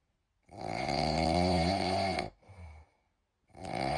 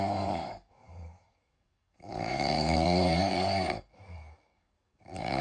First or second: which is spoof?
second